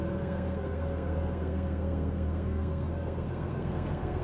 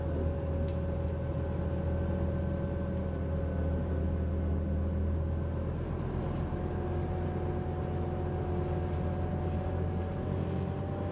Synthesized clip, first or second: first